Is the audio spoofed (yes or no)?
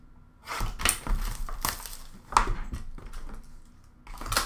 no